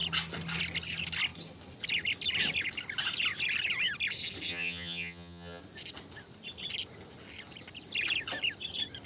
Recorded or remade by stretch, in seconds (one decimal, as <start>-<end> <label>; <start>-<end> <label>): 0.0-4.5 recorded; 4.5-5.6 remade; 5.6-9.1 recorded